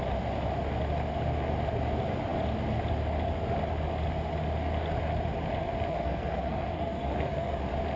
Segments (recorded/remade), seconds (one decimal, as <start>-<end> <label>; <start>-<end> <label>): 0.0-5.9 recorded; 5.9-7.6 remade; 7.6-8.0 recorded